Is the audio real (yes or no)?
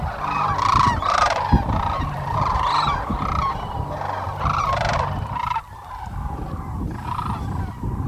no